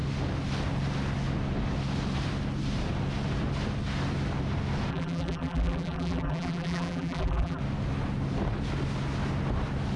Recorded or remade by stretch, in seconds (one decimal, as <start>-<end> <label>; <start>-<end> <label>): 0.0-4.9 recorded; 4.9-7.6 remade; 7.6-10.0 recorded